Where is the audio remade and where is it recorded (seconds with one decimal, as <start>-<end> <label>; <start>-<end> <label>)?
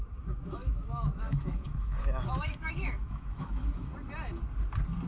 0.0-3.9 remade; 3.9-5.1 recorded